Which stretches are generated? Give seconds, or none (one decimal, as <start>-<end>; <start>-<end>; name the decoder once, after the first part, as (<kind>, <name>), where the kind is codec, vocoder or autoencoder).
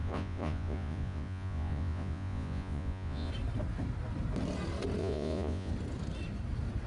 0.0-3.3 (vocoder, Vocos); 5.0-5.7